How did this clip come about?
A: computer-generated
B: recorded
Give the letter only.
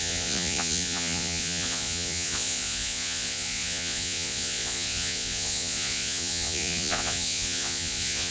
A